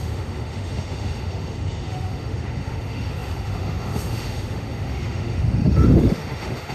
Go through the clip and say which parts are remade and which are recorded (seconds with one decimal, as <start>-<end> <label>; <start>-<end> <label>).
0.0-6.7 remade